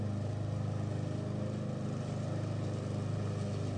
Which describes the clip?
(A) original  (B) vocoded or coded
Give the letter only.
A